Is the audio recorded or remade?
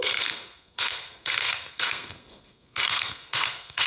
remade